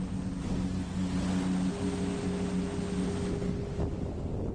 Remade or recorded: recorded